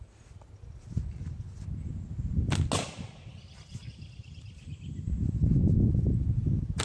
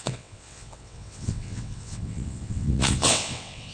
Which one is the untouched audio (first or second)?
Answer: first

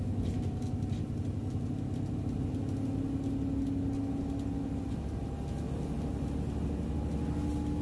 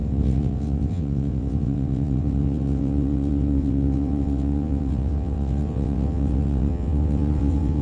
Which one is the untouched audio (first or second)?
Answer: first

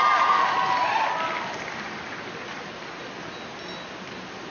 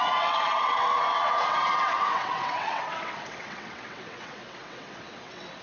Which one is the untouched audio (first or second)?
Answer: first